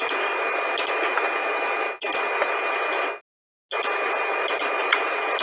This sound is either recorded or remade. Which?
recorded